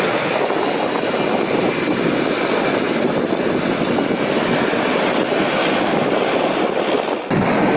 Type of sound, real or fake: real